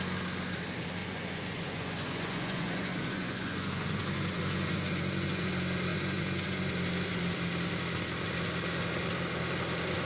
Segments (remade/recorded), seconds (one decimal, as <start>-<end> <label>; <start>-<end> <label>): 0.0-1.0 recorded; 1.0-5.5 remade; 5.5-5.9 recorded; 5.9-6.7 remade; 6.7-10.0 recorded